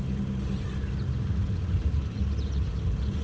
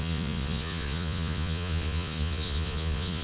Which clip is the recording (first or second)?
first